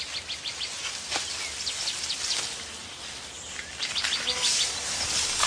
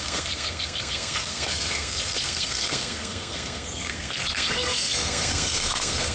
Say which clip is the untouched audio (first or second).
first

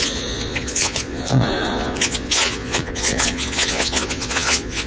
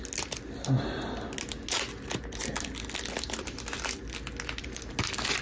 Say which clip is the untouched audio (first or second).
second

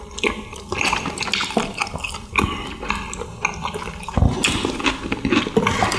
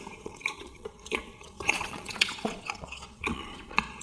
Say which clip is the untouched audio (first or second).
first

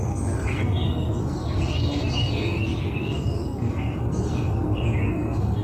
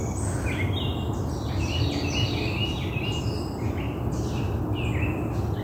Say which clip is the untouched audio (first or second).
second